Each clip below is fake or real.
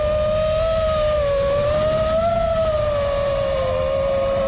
real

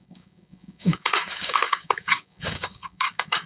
fake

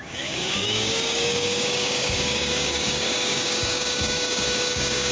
fake